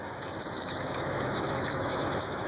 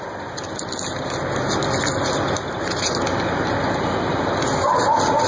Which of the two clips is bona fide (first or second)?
second